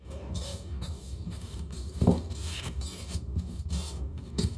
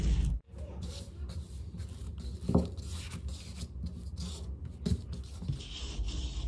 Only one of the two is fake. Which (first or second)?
first